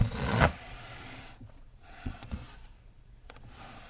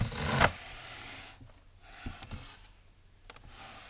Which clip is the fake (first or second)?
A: first